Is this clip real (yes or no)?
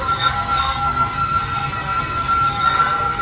no